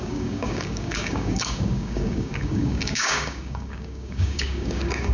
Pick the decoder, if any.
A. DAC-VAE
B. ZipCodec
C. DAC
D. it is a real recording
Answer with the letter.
C